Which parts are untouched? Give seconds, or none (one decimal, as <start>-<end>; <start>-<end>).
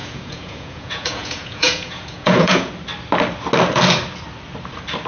2.7-5.1